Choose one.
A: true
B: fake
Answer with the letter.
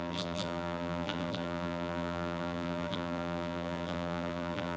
B